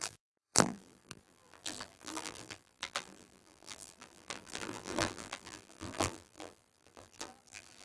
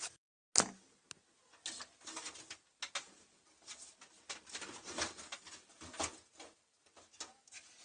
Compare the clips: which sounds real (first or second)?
second